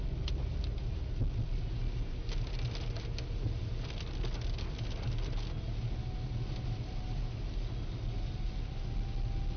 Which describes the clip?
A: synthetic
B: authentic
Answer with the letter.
B